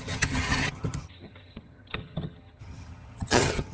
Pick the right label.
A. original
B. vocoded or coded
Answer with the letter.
B